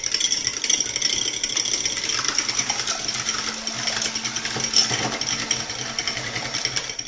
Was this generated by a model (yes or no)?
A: no